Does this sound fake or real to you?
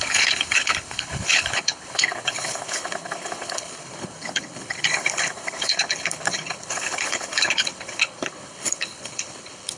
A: fake